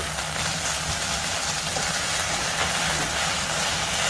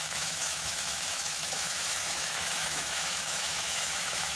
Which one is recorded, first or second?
first